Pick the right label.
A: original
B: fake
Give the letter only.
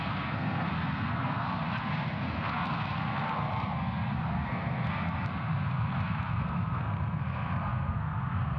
B